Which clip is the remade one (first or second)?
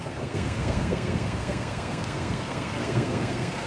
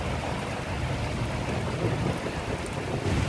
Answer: first